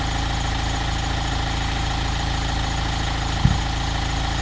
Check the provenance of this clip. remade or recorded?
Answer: recorded